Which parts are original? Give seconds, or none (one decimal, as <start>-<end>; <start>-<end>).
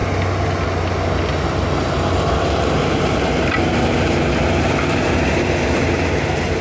0.0-6.6